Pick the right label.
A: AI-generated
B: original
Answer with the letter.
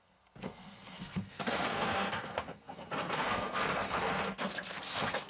A